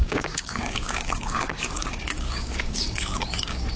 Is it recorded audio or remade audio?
remade